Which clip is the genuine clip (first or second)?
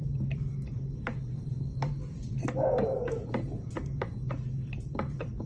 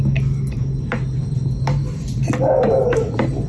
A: second